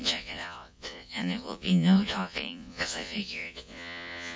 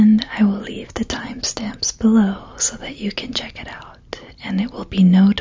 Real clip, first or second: second